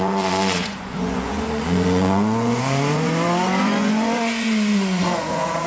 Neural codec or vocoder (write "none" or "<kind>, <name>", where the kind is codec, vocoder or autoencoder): vocoder, Vocos